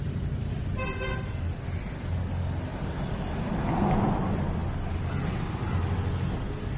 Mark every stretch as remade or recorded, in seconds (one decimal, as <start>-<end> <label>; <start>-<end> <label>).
0.0-6.8 recorded